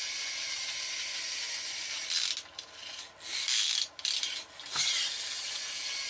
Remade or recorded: recorded